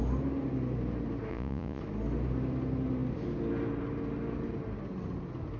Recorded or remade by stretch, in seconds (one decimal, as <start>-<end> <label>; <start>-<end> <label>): 0.0-1.3 recorded; 1.3-1.8 remade; 1.8-5.6 recorded